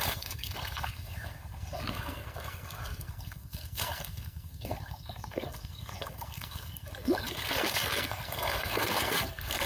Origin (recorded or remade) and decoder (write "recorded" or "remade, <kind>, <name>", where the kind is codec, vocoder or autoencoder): remade, codec, SNAC